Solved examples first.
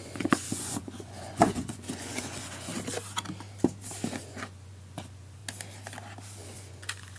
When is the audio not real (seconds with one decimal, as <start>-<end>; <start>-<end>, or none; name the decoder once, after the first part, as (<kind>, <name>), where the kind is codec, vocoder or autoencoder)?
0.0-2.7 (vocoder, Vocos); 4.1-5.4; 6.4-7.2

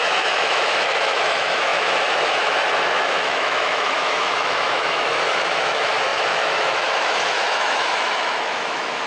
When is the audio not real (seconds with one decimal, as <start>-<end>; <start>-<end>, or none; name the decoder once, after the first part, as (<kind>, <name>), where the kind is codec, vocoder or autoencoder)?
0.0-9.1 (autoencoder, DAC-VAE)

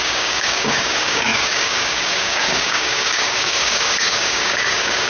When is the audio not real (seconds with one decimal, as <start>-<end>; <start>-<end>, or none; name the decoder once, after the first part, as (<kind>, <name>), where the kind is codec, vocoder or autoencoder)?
0.0-5.1 (codec, DAC)

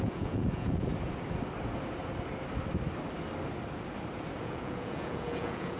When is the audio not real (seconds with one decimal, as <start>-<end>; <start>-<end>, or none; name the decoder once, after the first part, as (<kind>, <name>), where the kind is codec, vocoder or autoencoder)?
0.0-0.9 (vocoder, Vocos); 4.4-5.8